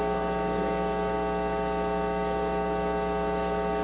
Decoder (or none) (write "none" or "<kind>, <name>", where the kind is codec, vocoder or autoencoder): none